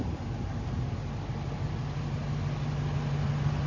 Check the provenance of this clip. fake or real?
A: real